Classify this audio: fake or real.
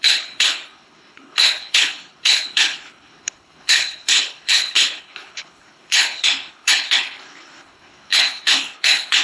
fake